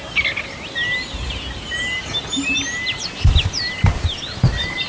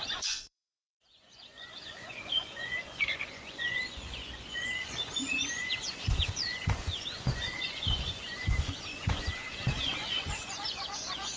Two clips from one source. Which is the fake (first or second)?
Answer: second